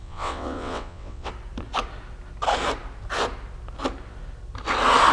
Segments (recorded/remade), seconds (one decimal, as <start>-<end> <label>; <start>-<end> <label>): 0.0-1.3 remade; 1.3-5.1 recorded